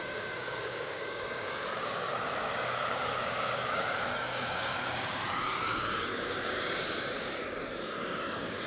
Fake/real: fake